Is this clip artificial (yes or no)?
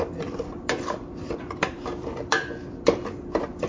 yes